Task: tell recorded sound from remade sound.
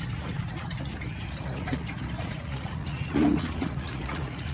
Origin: remade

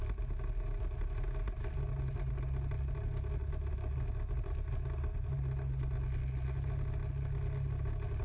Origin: recorded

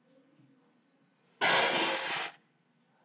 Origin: recorded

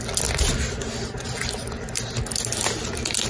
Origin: recorded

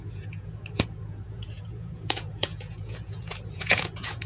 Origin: remade